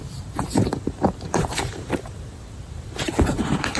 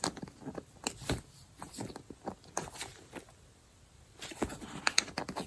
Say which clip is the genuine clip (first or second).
second